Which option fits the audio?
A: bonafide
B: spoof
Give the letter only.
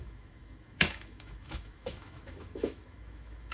B